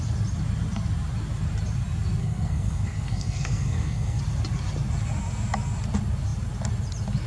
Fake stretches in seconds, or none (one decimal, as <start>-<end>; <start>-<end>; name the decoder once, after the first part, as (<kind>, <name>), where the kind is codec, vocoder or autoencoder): 2.2-4.2 (codec, SNAC)